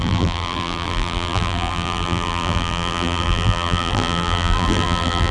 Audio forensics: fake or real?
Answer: fake